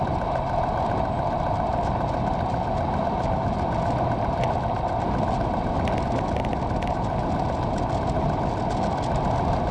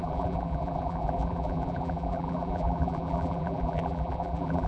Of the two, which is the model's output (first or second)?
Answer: second